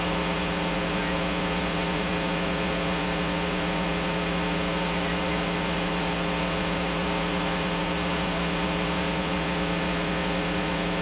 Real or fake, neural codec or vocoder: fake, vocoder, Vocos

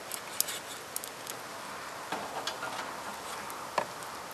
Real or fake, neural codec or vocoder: real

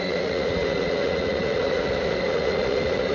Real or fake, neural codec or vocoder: fake, vocoder, Vocos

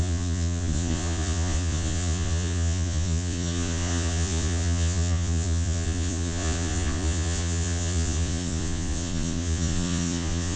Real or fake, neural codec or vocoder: fake, vocoder, Vocos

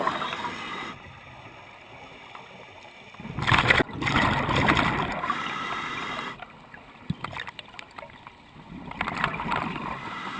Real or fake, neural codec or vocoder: real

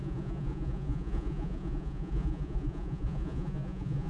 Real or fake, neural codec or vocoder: fake, vocoder, Vocos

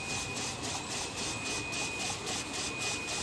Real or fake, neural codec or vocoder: real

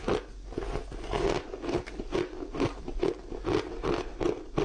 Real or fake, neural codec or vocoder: real